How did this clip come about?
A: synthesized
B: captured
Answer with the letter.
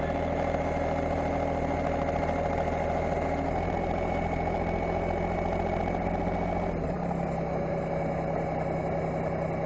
B